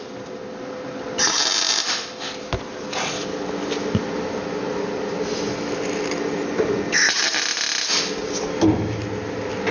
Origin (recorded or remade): recorded